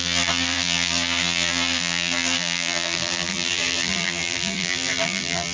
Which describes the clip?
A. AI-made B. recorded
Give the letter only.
A